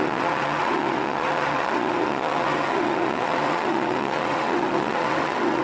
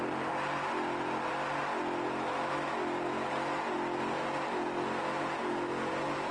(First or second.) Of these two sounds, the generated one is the first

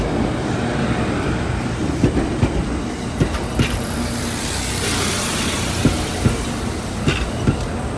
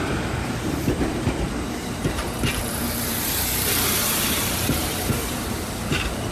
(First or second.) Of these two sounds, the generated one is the second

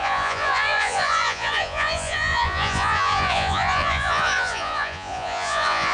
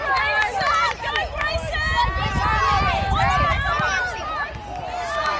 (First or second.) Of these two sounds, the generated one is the first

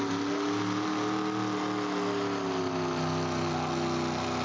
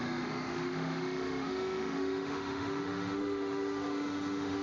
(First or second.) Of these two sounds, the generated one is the second